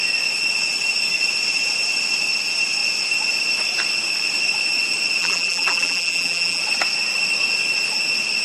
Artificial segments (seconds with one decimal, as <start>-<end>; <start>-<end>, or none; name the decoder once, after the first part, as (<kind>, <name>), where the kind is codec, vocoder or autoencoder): 5.2-6.6 (vocoder, BigVGAN v2)